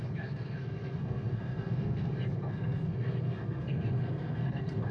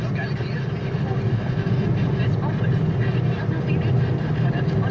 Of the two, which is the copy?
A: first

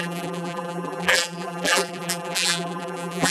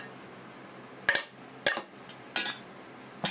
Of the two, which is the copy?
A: first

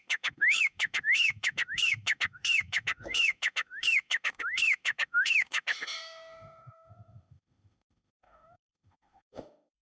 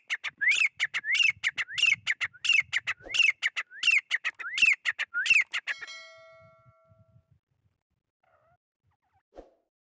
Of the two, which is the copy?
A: first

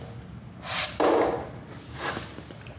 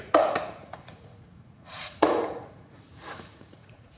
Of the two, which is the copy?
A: second